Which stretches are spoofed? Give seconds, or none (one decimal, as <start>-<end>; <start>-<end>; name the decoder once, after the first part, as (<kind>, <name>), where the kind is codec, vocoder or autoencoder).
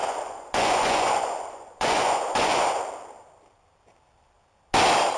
0.0-2.8 (vocoder, Vocos)